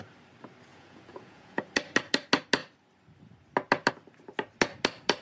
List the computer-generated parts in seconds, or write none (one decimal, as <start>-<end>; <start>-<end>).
0.7-1.6